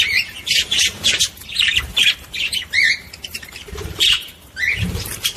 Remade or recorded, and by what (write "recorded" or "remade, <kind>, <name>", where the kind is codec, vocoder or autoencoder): remade, vocoder, BigVGAN v2